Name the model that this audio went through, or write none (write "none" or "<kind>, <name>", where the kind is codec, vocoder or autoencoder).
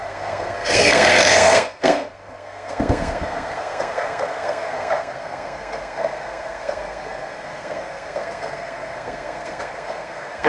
codec, SNAC